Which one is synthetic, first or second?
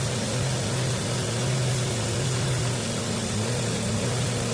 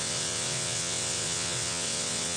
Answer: second